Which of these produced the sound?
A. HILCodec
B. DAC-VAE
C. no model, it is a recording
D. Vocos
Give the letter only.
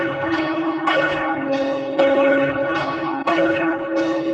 A